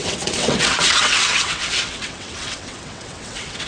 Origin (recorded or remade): remade